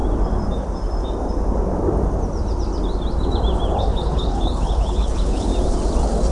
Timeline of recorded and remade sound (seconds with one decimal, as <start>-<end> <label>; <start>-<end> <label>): 0.0-3.8 recorded; 3.8-5.5 remade; 5.5-6.3 recorded